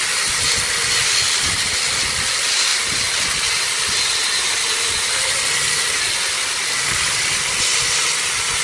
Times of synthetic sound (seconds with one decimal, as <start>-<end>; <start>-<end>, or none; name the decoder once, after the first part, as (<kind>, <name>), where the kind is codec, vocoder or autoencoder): none